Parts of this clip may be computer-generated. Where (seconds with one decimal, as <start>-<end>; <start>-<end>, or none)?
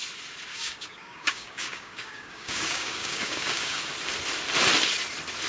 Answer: 0.5-3.8